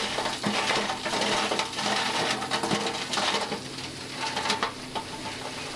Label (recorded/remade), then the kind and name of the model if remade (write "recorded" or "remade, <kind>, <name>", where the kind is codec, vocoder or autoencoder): recorded